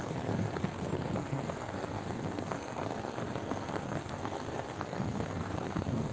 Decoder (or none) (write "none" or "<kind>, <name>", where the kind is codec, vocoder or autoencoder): codec, SNAC